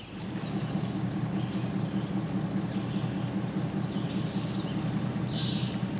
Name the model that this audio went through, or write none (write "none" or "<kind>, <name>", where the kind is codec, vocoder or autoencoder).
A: none